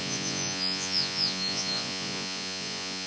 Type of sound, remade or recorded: remade